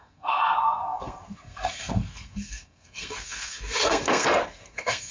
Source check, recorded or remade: remade